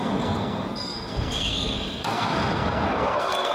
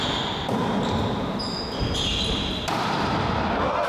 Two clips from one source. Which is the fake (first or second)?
first